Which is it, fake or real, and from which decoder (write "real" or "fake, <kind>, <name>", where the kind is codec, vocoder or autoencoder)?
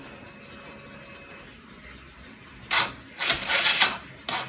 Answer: real